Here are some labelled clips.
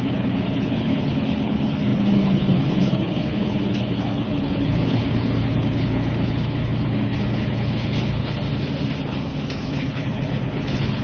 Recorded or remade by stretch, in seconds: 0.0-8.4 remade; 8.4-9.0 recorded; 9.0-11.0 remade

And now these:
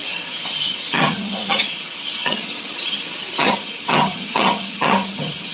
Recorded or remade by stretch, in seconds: 0.0-5.5 remade

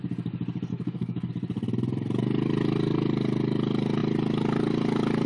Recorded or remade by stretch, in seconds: 0.0-0.7 recorded; 0.7-1.3 remade; 1.3-5.3 recorded

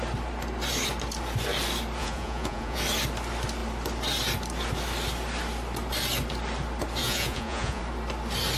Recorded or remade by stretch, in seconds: 0.0-2.0 recorded; 2.0-2.8 remade; 2.8-7.0 recorded; 7.0-7.8 remade; 7.8-8.6 recorded

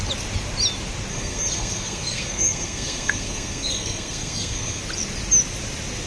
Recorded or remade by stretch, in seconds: 0.0-1.1 recorded; 1.1-4.8 remade; 4.8-6.1 recorded

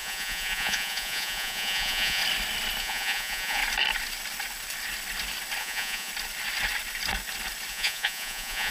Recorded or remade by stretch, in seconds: 0.0-2.2 remade; 2.2-2.8 recorded; 2.8-3.6 remade; 3.6-5.6 recorded; 5.6-6.1 remade; 6.1-7.7 recorded; 7.7-8.7 remade

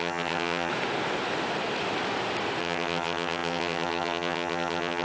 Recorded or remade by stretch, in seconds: 0.0-0.7 remade; 0.7-2.6 recorded; 2.6-5.0 remade

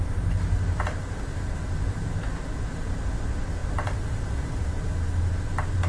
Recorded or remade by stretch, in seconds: 0.0-5.9 recorded